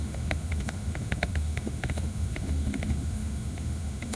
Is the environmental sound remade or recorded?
remade